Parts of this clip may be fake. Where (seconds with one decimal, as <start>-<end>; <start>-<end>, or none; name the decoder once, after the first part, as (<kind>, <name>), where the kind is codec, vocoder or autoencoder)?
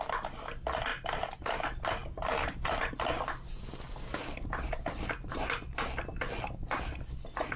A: none